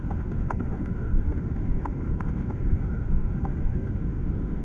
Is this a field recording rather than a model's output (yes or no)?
no